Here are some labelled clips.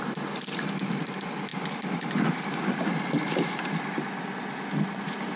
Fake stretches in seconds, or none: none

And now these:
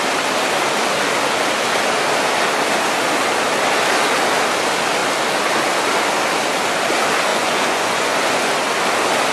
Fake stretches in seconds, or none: 7.3-8.5 (vocoder, Vocos)

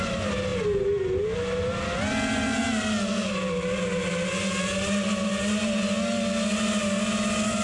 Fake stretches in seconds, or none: none

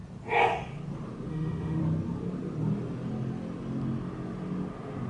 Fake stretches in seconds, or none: 1.3-1.8 (autoencoder, DAC-VAE)

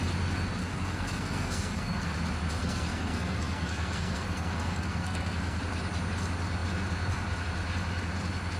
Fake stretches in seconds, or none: 0.6-2.2 (codec, SNAC); 2.6-5.6

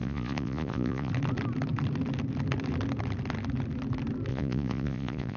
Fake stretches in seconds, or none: 0.0-1.1 (vocoder, Vocos); 4.3-5.4

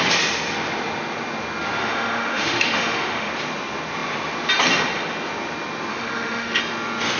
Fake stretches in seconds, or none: 1.8-3.3 (autoencoder, DAC-VAE); 5.9-6.6

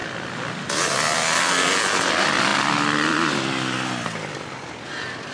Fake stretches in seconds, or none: none